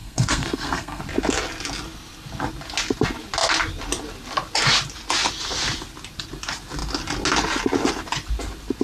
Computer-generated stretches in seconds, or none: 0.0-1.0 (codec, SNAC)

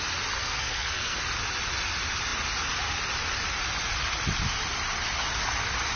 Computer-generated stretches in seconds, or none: 0.4-1.2 (codec, SNAC)

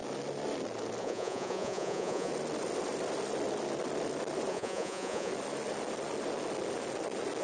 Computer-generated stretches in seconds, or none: 1.0-2.3 (vocoder, Vocos); 4.5-5.3

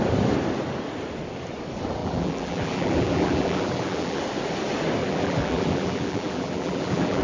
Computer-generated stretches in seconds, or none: 2.0-4.2 (vocoder, BigVGAN v2); 5.0-7.2

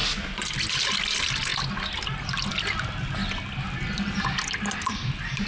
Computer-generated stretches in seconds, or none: none

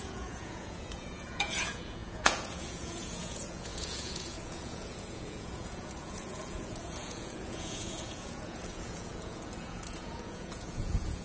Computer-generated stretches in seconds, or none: 0.0-11.2 (vocoder, Vocos)

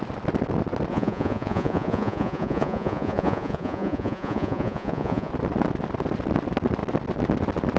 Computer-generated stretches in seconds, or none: 0.9-5.3 (vocoder, Vocos)

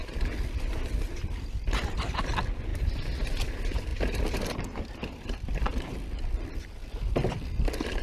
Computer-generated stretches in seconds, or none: 0.0-2.2 (vocoder, BigVGAN v2); 2.7-3.5; 3.9-7.3